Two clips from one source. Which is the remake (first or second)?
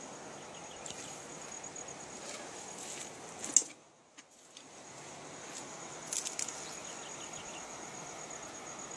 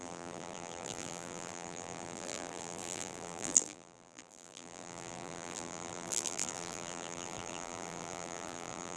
second